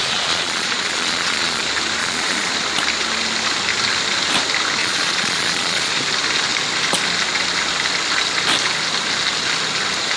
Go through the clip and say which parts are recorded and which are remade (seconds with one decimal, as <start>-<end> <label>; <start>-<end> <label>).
0.0-1.6 remade; 1.6-2.0 recorded; 2.0-2.5 remade; 2.5-4.8 recorded; 4.8-5.9 remade; 5.9-10.2 recorded